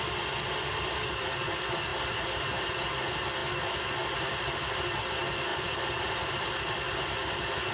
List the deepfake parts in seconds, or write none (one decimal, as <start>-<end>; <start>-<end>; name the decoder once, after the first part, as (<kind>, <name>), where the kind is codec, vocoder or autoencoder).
1.9-2.7 (vocoder, BigVGAN v2); 5.5-6.4